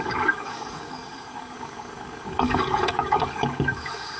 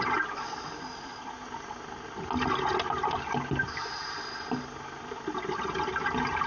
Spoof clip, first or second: first